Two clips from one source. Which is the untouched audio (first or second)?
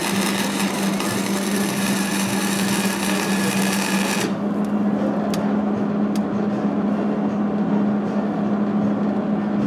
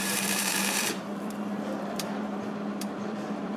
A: first